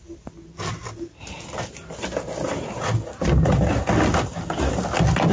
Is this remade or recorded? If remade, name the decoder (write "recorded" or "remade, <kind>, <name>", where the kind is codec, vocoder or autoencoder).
recorded